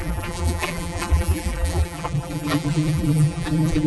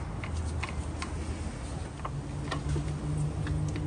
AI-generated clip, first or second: first